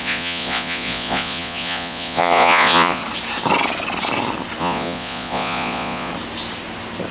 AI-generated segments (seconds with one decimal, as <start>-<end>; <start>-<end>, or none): 0.0-3.0; 4.6-6.1